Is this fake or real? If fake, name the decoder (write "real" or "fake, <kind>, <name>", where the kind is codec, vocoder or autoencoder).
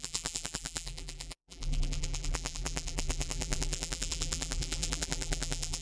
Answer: fake, vocoder, BigVGAN v2